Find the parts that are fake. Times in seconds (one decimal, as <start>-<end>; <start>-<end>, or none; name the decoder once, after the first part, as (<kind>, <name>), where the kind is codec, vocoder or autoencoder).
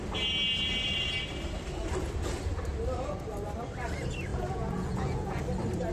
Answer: 4.3-5.4 (vocoder, Vocos)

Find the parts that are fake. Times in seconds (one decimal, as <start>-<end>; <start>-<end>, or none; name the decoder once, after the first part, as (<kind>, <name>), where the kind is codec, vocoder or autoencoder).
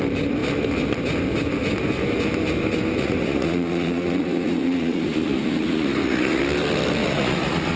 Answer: 3.0-6.4 (vocoder, Vocos); 7.0-7.8